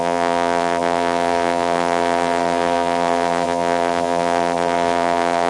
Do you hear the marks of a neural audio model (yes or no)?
yes